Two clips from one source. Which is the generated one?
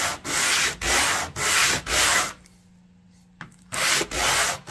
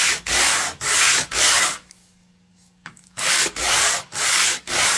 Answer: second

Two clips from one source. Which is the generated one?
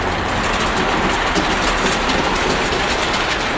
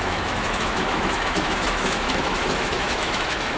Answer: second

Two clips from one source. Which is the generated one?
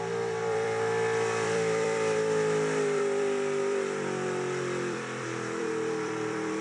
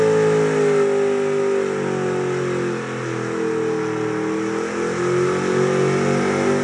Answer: first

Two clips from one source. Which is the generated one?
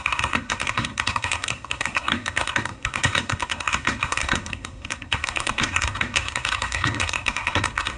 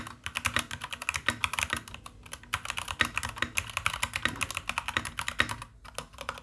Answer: first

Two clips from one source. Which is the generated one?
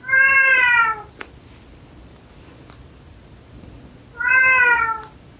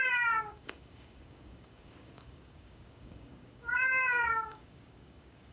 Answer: second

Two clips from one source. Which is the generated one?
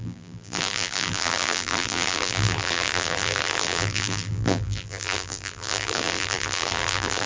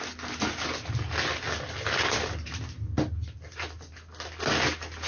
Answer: first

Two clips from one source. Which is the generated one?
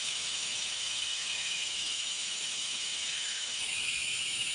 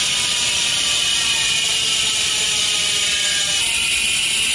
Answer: first